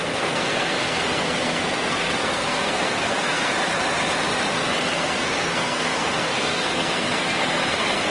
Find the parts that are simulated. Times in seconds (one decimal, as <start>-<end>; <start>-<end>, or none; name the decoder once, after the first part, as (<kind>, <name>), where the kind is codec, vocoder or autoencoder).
0.0-3.5 (codec, SNAC); 4.9-8.1